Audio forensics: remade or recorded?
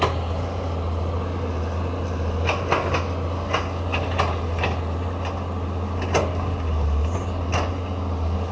recorded